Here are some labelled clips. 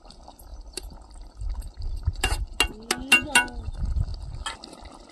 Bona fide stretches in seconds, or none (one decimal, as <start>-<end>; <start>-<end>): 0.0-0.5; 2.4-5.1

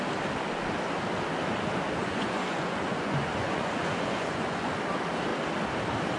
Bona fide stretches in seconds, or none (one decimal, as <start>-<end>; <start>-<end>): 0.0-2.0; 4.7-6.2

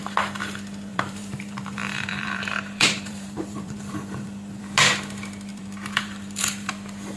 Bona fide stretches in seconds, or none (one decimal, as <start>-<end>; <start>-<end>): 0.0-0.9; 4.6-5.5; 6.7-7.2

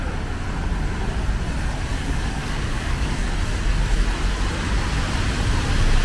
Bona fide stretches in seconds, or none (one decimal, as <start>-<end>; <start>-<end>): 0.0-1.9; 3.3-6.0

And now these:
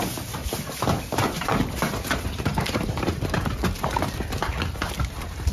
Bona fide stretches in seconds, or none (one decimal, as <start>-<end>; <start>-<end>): 0.0-0.4; 3.5-5.5